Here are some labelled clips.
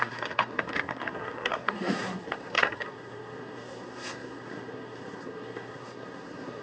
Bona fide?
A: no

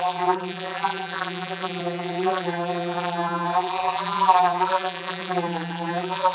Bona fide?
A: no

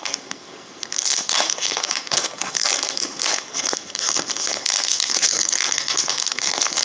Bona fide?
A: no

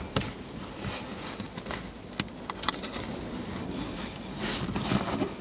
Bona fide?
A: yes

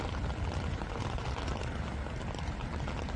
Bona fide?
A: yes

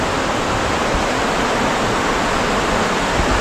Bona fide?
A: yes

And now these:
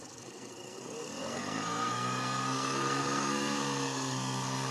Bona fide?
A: no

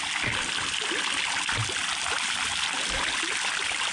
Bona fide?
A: yes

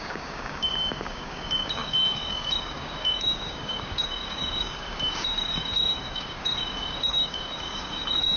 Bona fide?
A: no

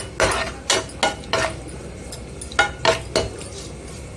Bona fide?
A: yes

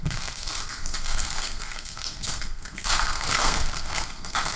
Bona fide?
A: no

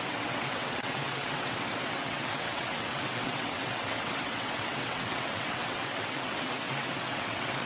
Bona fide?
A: no